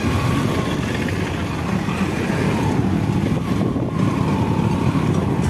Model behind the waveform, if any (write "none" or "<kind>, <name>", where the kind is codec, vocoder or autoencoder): none